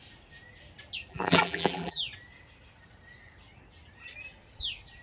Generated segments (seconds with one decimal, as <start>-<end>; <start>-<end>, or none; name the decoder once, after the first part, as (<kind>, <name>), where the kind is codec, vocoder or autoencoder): 1.1-2.0 (vocoder, BigVGAN v2)